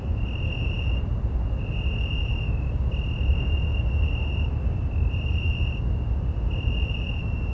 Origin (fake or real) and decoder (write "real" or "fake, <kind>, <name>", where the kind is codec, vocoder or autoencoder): real